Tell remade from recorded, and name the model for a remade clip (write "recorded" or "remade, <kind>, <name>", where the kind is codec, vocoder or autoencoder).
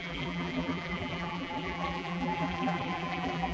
remade, vocoder, BigVGAN v2